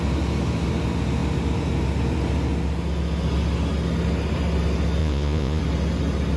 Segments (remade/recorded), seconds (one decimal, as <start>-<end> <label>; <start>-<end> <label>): 0.0-5.0 recorded; 5.0-5.6 remade; 5.6-6.4 recorded